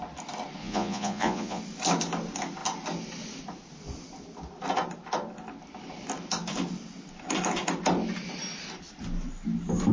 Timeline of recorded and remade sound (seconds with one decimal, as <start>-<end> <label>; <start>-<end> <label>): 0.0-0.6 recorded; 0.6-1.6 remade; 1.6-9.9 recorded